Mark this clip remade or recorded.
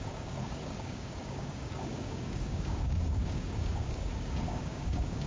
remade